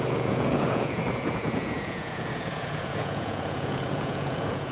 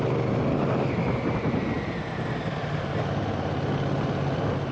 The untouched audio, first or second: second